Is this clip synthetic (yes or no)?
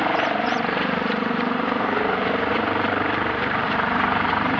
yes